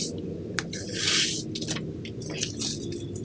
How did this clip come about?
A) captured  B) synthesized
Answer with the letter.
A